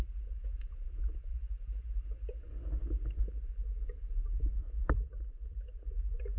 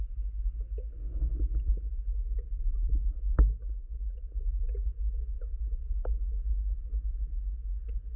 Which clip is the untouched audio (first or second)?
second